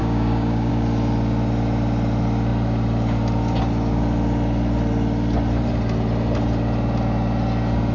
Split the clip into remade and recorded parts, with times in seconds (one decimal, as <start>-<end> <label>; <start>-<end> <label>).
0.0-0.7 remade; 0.7-7.9 recorded